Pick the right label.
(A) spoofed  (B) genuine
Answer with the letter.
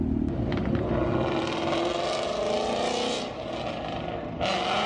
B